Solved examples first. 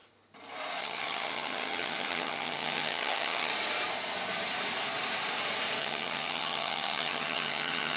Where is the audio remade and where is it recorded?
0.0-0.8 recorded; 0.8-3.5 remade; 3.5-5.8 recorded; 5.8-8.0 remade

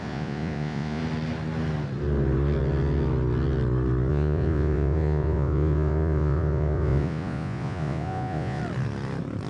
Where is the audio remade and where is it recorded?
0.0-1.0 remade; 1.0-4.1 recorded; 4.1-8.6 remade; 8.6-9.5 recorded